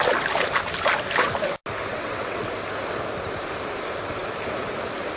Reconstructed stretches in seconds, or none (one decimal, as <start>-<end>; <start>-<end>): 1.9-2.5